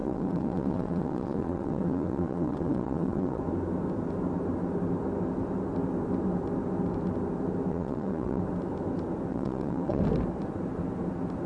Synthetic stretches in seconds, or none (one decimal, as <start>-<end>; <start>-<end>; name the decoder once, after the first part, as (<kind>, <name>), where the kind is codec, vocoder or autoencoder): 0.0-3.4 (vocoder, WaveNeXt); 7.7-8.4; 9.3-10.0